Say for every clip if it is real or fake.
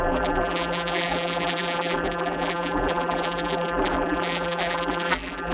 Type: fake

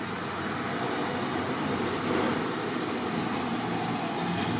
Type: real